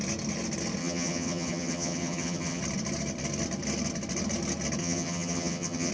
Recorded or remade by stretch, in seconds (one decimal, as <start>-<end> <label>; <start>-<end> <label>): 0.0-0.8 recorded; 0.8-2.6 remade; 2.6-4.8 recorded; 4.8-5.9 remade